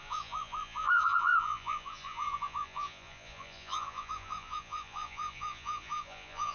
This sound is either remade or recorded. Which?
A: remade